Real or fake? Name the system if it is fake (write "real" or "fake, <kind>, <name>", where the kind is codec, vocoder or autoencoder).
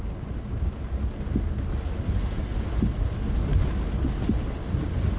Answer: real